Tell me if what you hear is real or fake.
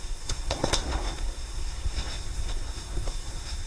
fake